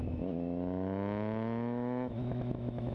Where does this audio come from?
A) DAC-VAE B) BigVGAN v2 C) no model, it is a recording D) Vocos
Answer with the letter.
A